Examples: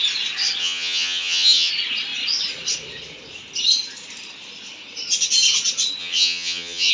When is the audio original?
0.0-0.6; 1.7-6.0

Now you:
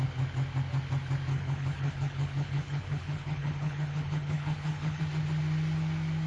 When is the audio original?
0.0-1.3; 5.0-6.3

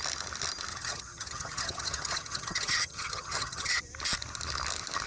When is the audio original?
0.0-0.7; 3.8-5.1

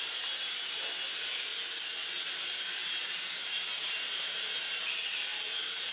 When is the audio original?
1.5-2.4

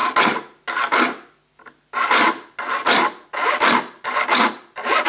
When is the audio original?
0.0-5.1